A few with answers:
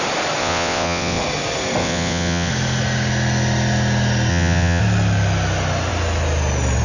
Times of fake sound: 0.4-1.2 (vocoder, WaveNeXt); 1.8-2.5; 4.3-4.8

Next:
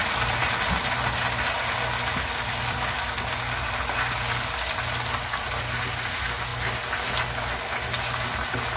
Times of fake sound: none

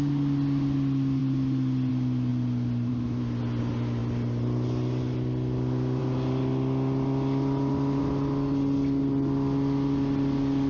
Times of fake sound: none

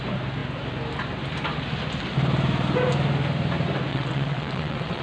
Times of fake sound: 3.9-5.0 (vocoder, WaveNeXt)

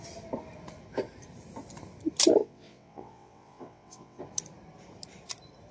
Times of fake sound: 2.4-4.2 (vocoder, WaveNeXt)

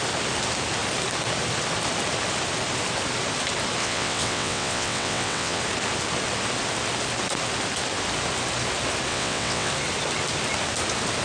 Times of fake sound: 3.8-5.6 (vocoder, WaveNeXt); 9.1-9.7

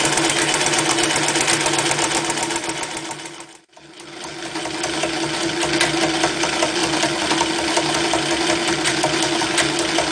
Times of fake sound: none